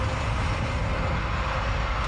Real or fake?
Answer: real